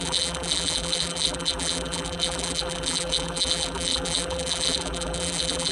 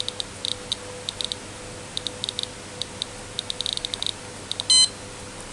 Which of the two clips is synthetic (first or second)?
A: first